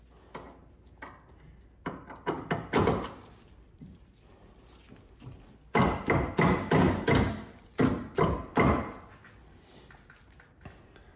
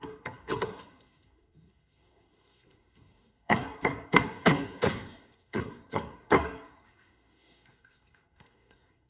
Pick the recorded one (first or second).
first